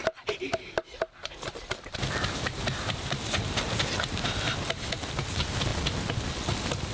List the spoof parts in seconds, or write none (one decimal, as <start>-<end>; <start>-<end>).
none